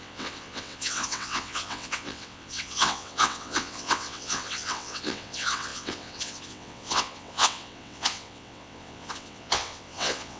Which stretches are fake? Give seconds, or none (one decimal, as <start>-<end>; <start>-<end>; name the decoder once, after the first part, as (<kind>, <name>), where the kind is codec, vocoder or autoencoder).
0.0-10.4 (vocoder, WaveNeXt)